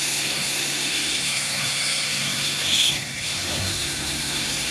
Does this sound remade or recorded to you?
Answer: remade